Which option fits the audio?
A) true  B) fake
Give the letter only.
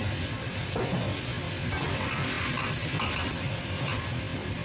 A